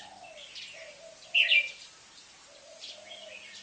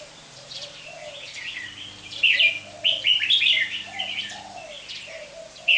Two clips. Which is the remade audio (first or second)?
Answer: second